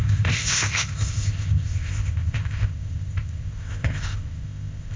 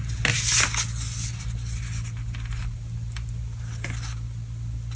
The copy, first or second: first